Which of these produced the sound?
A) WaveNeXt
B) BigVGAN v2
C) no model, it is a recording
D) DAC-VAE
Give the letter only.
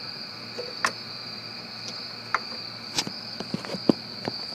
C